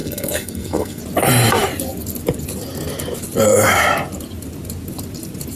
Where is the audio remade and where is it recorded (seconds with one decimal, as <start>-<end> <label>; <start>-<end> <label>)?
0.0-1.0 remade; 1.0-5.6 recorded